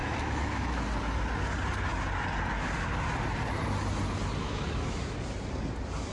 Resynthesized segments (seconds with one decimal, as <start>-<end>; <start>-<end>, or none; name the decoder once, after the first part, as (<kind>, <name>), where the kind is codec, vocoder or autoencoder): 0.0-0.8 (autoencoder, DAC-VAE); 4.4-5.0